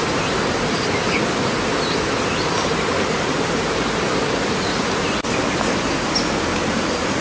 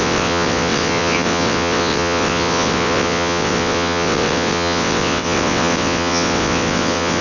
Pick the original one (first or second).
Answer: first